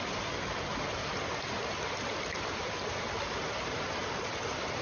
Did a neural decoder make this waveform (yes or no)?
no